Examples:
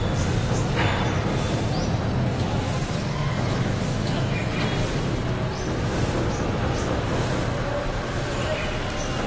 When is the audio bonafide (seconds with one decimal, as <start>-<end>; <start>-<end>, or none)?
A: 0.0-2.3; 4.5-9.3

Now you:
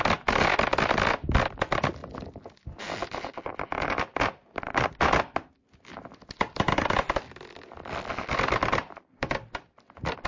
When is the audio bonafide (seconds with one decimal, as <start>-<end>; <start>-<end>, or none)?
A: 0.0-10.3

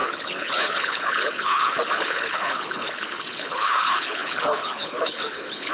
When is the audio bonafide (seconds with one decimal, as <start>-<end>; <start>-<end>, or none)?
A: none